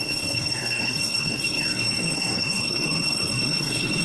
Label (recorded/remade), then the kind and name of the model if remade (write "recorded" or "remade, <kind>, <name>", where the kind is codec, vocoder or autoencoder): remade, codec, SNAC